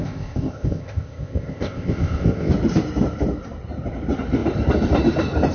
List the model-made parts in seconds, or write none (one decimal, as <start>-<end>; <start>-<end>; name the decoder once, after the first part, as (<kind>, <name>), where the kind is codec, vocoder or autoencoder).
0.0-2.5 (codec, ZipCodec)

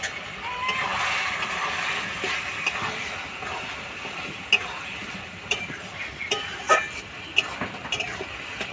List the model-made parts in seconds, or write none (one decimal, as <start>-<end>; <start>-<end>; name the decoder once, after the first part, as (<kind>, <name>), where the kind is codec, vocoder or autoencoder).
none

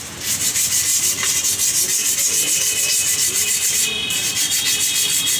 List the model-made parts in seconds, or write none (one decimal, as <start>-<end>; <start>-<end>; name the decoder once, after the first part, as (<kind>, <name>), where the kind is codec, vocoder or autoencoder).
none

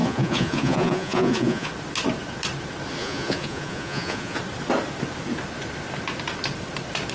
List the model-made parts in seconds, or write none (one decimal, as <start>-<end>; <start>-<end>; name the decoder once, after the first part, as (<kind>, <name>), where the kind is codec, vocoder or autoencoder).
0.0-1.7 (vocoder, Vocos); 3.0-4.4

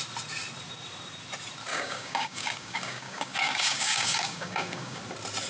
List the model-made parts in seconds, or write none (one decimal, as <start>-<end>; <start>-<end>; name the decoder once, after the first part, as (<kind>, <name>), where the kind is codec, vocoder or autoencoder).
1.7-5.0 (codec, DAC)

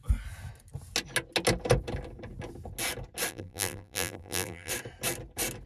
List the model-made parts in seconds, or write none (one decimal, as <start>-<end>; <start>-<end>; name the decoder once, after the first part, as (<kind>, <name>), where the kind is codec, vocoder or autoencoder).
3.3-4.7 (vocoder, BigVGAN v2)

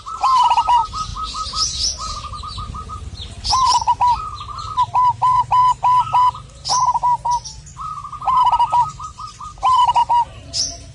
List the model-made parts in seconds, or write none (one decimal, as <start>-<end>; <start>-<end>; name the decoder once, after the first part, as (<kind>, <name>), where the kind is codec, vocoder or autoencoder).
0.0-1.1 (vocoder, BigVGAN v2); 2.9-5.6; 8.8-10.9